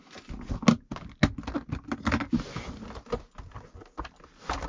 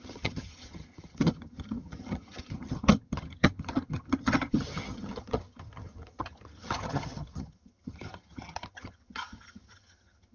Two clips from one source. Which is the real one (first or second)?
first